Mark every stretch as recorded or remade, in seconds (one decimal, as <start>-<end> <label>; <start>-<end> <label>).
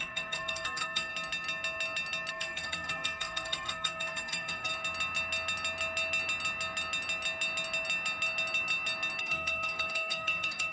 0.0-1.1 remade; 1.1-2.3 recorded; 2.3-4.7 remade; 4.7-9.2 recorded; 9.2-10.7 remade